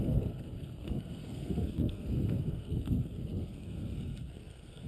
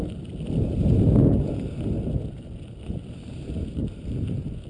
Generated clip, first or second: first